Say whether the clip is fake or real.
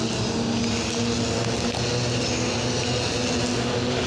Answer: real